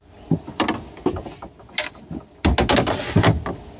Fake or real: real